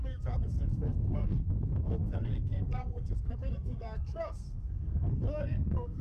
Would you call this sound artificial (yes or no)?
yes